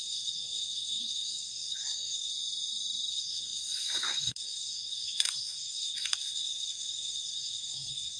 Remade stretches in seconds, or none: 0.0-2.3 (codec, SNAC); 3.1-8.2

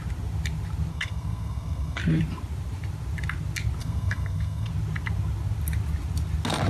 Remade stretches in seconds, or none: 0.9-2.0 (codec, SNAC); 3.8-4.7